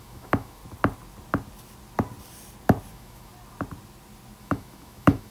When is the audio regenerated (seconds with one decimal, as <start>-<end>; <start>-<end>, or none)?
0.0-0.6; 2.9-3.3; 4.4-5.3